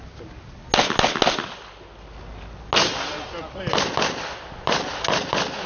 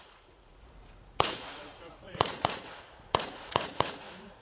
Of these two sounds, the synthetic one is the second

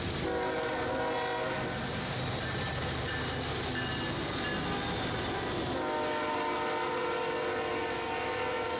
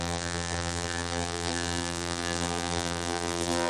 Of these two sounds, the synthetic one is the second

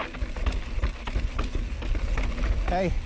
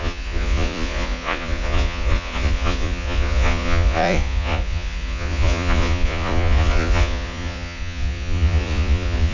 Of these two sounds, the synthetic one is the second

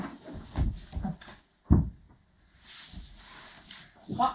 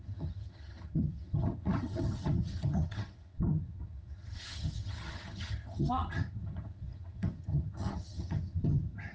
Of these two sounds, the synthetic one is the second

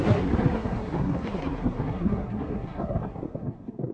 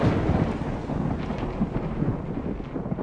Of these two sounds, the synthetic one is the first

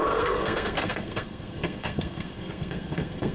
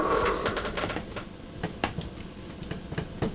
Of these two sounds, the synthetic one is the first